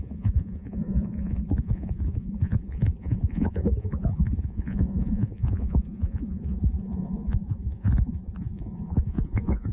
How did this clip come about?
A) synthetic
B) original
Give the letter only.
A